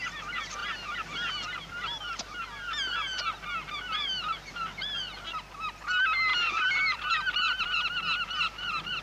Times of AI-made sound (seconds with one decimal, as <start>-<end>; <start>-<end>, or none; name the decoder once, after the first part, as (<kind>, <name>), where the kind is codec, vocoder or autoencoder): 6.3-7.0 (vocoder, BigVGAN v2)